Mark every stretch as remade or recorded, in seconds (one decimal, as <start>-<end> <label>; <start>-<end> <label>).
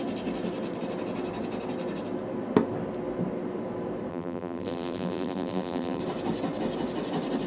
0.0-4.1 recorded; 4.1-6.0 remade; 6.0-7.5 recorded